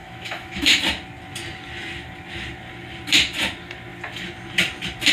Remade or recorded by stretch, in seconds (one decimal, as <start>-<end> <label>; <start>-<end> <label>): 0.0-0.8 remade; 0.8-5.1 recorded